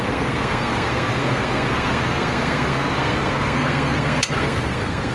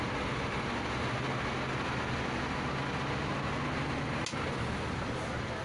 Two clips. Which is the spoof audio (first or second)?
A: first